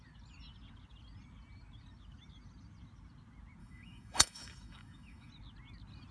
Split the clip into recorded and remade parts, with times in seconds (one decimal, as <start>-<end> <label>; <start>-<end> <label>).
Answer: 0.0-3.6 recorded; 3.6-5.3 remade; 5.3-6.1 recorded